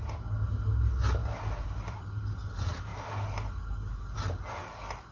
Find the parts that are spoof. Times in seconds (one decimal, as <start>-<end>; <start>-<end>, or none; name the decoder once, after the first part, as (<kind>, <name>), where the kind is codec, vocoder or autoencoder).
1.2-2.0 (vocoder, BigVGAN v2)